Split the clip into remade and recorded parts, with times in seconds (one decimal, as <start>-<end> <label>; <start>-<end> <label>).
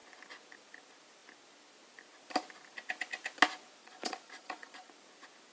0.0-3.8 recorded; 3.8-4.9 remade; 4.9-5.5 recorded